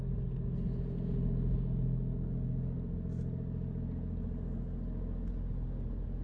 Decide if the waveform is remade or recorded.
recorded